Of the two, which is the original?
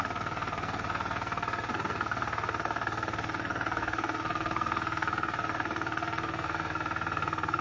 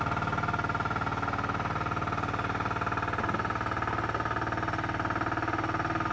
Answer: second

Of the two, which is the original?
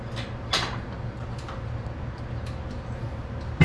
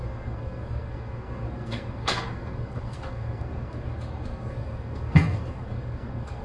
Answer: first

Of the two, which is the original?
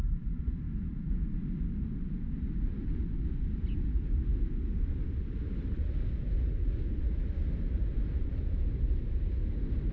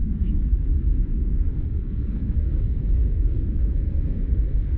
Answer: first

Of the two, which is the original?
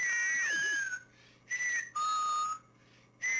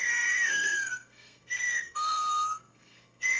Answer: first